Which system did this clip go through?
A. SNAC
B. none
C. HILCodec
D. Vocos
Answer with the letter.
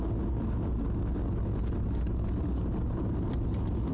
B